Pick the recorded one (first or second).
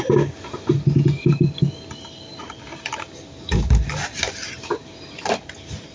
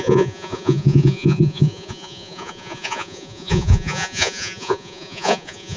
first